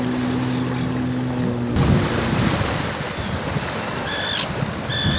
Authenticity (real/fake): real